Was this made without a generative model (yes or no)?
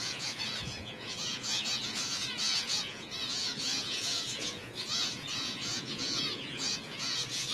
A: no